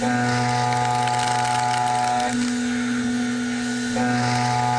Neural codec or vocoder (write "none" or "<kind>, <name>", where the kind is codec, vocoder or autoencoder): none